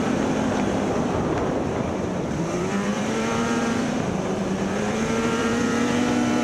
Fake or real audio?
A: fake